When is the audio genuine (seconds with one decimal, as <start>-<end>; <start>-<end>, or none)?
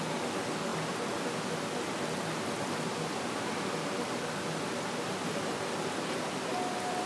0.0-7.1